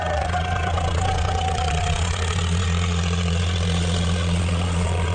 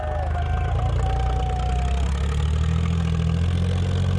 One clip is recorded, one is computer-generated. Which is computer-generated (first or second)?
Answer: first